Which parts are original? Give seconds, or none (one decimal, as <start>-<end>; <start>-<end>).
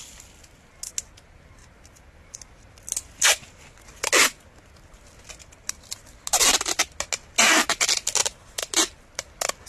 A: 0.0-9.7